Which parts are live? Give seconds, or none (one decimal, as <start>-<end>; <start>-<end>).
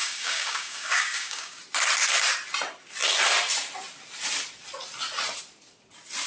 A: 1.6-6.3